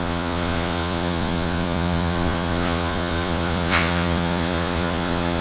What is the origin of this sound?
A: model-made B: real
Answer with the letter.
A